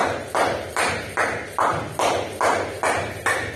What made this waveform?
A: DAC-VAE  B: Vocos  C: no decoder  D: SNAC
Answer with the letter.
C